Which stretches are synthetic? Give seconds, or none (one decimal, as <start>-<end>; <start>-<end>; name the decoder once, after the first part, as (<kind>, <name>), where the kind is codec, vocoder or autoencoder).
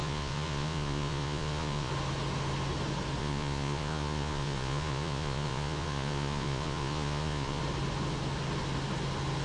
0.0-1.9 (vocoder, Vocos); 3.2-7.6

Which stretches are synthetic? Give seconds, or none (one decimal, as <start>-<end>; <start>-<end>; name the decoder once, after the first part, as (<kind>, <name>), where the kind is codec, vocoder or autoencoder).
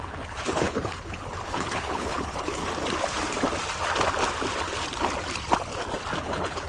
0.0-2.6 (codec, HILCodec); 6.2-6.7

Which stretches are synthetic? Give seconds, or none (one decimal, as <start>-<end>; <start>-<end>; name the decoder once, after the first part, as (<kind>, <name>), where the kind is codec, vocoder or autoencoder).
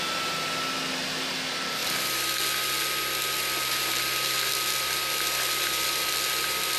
none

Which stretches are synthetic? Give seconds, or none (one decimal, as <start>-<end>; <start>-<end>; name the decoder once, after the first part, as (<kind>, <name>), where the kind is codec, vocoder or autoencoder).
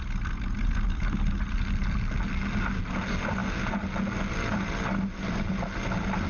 none